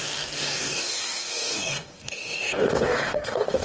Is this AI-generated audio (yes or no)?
yes